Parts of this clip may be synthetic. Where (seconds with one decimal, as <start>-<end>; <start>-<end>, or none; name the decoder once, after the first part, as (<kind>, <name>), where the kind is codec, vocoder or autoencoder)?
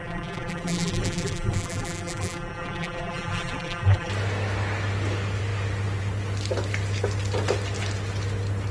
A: 0.0-4.1 (vocoder, BigVGAN v2)